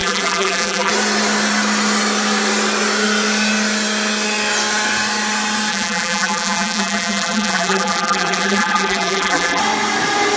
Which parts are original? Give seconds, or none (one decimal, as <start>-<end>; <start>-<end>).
0.9-5.7; 9.6-10.4